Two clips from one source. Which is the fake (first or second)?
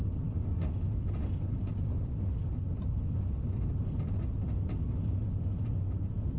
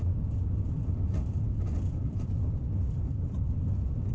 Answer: second